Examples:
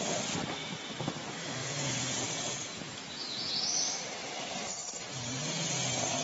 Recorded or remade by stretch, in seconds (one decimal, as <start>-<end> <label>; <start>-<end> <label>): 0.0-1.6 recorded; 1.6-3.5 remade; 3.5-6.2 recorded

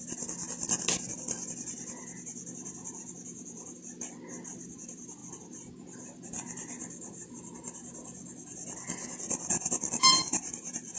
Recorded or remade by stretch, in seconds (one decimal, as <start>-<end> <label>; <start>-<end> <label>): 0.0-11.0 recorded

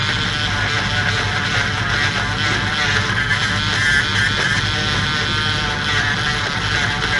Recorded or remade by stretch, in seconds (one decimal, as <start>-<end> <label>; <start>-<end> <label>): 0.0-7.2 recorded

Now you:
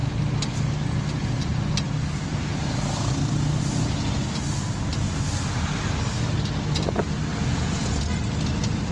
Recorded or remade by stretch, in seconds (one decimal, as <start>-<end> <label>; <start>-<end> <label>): 0.0-7.3 recorded; 7.3-8.0 remade; 8.0-8.9 recorded

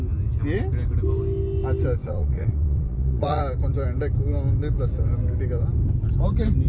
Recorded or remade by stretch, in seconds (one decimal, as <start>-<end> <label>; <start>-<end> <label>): 0.0-2.0 recorded; 2.0-3.4 remade; 3.4-6.7 recorded